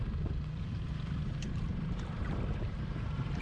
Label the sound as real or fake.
fake